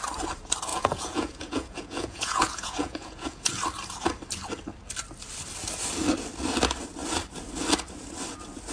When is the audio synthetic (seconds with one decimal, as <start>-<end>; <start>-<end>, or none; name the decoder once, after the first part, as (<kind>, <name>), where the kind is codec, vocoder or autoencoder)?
0.7-3.4 (vocoder, Vocos)